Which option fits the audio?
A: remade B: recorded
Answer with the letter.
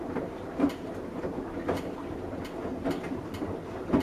B